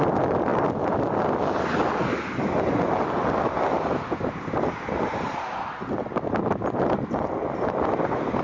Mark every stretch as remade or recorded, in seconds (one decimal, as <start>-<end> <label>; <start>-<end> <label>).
0.0-8.4 recorded